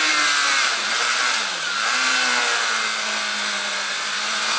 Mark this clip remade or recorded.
recorded